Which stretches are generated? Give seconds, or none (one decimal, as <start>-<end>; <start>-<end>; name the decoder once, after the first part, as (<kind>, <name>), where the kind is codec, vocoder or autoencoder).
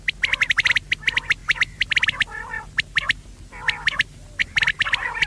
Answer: 1.4-2.0 (vocoder, BigVGAN v2); 4.4-5.3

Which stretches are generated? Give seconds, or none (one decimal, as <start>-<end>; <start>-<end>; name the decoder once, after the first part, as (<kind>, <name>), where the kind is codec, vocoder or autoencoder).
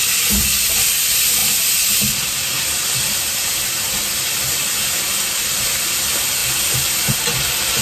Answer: none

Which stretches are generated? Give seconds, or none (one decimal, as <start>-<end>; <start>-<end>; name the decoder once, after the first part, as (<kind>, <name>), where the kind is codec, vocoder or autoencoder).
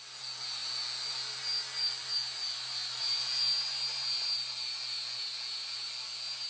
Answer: none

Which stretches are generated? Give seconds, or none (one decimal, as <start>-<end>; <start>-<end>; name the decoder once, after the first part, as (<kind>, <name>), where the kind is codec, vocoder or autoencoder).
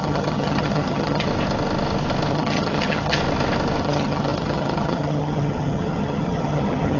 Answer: 0.0-1.3 (vocoder, HiFi-GAN); 2.3-3.2; 3.8-7.0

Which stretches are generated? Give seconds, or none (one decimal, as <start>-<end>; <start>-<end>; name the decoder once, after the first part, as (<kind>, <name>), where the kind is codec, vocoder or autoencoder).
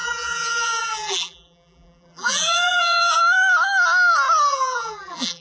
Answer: 0.0-3.2 (vocoder, BigVGAN v2); 4.5-5.4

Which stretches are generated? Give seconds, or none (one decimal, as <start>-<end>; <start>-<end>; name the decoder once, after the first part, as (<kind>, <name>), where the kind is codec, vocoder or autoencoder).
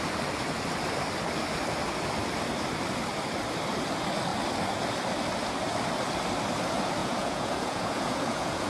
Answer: 7.0-8.7 (vocoder, Vocos)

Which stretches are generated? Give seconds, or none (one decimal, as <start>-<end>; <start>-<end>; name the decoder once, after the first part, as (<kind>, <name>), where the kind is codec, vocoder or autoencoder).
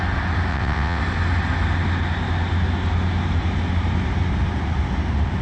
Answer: 0.5-1.0 (vocoder, WaveNeXt)